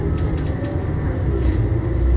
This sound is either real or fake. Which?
real